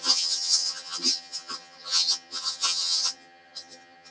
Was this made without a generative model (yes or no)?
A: no